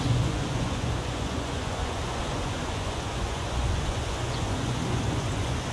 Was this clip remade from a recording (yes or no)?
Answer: yes